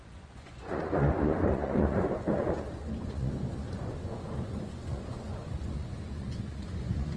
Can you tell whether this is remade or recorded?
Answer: remade